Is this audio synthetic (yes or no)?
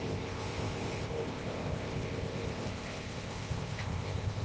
yes